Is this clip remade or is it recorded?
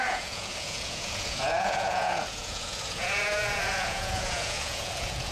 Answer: remade